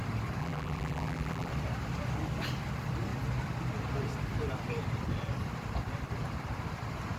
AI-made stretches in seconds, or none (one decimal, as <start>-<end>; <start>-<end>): 0.4-1.5